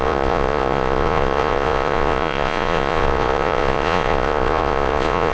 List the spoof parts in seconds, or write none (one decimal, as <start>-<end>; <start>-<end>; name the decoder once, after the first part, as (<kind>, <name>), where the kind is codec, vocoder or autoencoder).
0.0-5.3 (vocoder, Vocos)